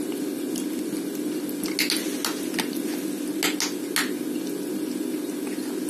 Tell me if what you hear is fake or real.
real